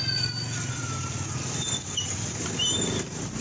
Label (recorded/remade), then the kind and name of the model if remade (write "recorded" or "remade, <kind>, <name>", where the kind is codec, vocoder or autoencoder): recorded